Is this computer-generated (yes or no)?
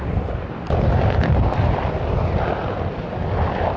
no